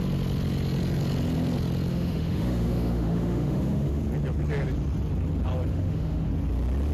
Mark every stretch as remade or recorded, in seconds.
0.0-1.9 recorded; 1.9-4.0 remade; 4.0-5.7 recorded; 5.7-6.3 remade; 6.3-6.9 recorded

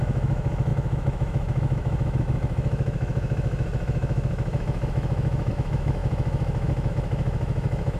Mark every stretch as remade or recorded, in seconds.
0.0-8.0 remade

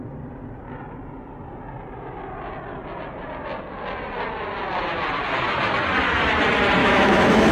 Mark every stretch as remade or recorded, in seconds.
0.0-6.8 recorded; 6.8-7.5 remade

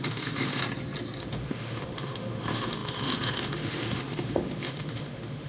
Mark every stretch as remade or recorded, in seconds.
0.0-0.6 remade; 0.6-1.2 recorded; 1.2-5.5 remade